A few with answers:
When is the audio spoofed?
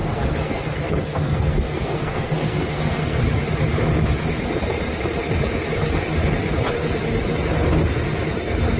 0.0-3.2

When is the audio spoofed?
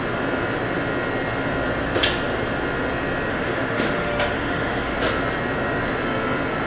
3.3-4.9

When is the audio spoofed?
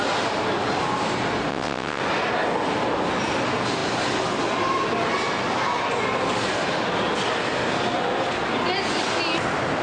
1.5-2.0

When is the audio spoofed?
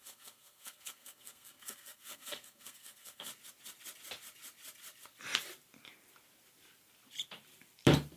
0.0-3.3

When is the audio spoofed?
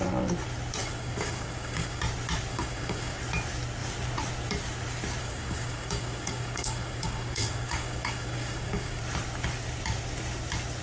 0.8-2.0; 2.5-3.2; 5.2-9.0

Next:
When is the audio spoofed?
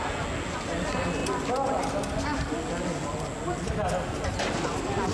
none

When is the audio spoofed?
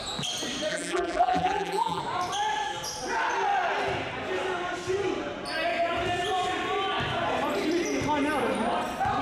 0.7-2.0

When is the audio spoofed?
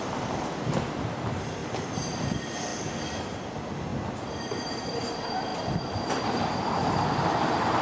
0.0-2.7; 3.2-7.8